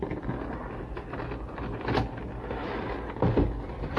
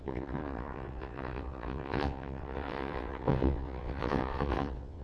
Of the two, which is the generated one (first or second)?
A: second